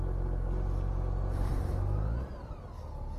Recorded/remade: recorded